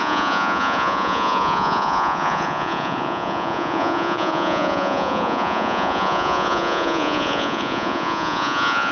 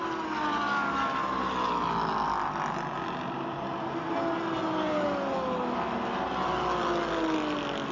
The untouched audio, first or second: second